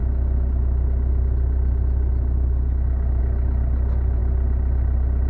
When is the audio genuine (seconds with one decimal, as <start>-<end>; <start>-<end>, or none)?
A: 0.0-5.3